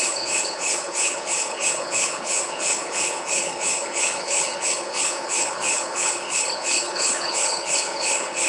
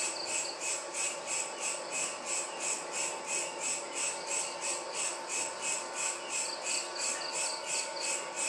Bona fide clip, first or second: second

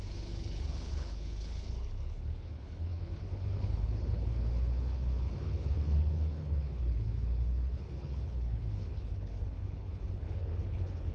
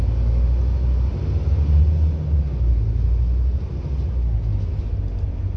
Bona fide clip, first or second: second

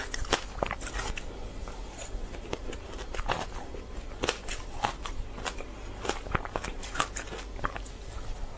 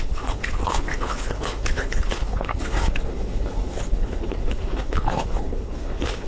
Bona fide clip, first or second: first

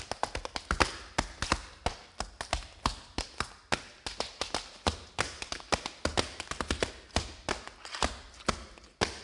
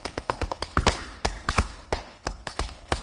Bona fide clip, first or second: first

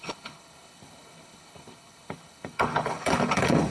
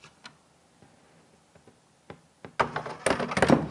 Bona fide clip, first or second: second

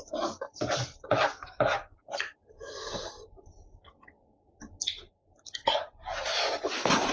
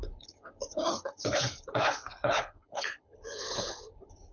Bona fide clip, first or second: first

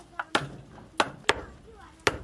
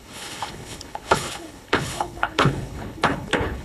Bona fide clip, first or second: first